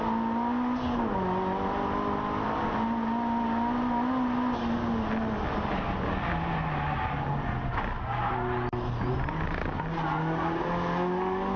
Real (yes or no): yes